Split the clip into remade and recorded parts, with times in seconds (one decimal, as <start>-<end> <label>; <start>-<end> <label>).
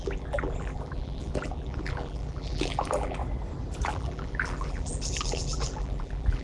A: 0.0-3.2 remade; 3.2-3.9 recorded; 3.9-6.4 remade